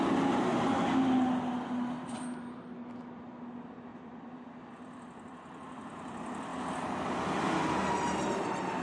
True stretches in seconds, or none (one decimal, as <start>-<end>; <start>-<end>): 0.0-3.9; 4.6-8.8